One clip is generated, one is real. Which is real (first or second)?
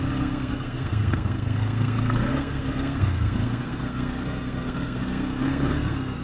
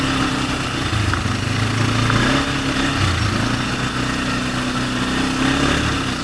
second